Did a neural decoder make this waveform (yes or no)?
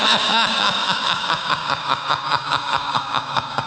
yes